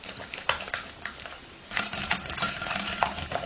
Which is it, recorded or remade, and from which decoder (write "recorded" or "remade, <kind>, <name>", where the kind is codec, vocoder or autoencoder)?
remade, vocoder, BigVGAN v2